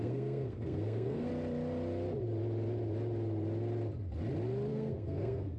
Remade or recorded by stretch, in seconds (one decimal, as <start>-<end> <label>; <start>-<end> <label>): 0.0-1.3 remade; 1.3-4.7 recorded; 4.7-5.6 remade